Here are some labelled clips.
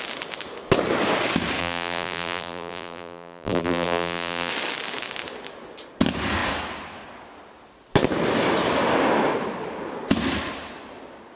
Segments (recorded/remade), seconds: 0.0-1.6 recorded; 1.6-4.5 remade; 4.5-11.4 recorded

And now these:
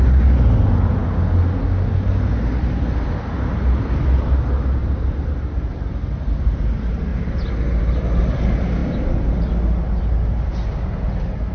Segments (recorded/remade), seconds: 0.0-4.8 recorded; 4.8-6.6 remade; 6.6-11.5 recorded

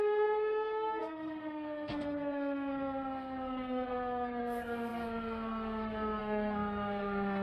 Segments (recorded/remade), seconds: 0.0-7.4 remade

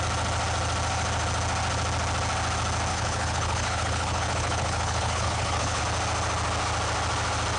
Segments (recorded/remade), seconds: 0.0-2.9 recorded; 2.9-5.8 remade; 5.8-7.6 recorded

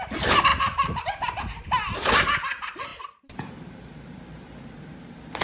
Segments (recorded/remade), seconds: 0.0-5.4 remade

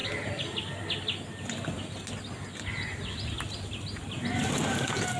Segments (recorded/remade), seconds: 0.0-5.2 recorded

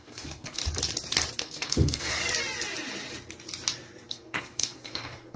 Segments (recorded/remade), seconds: 0.0-0.6 remade; 0.6-1.4 recorded; 1.4-2.2 remade; 2.2-4.1 recorded; 4.1-5.4 remade